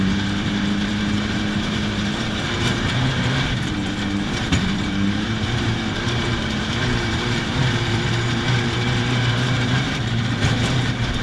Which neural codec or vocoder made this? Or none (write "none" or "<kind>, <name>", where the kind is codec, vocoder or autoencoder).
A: vocoder, BigVGAN v2